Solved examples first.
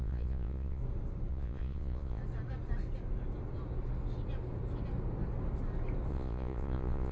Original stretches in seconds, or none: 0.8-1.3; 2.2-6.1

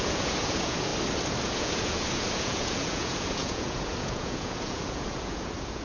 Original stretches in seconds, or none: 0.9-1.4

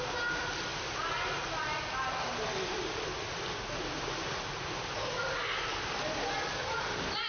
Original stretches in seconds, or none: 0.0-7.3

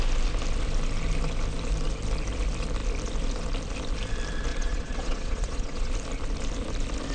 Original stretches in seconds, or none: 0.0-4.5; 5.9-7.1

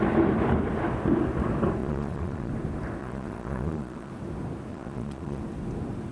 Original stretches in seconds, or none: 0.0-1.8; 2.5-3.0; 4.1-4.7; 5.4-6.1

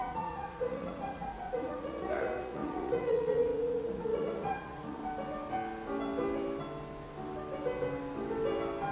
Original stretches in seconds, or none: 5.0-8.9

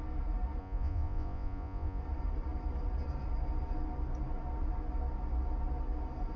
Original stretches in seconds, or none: 0.0-0.6; 2.0-6.4

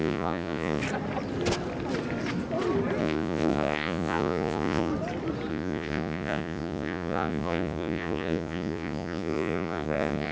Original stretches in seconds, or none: 0.8-3.0; 4.9-5.5